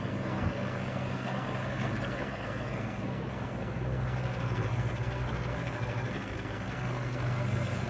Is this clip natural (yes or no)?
no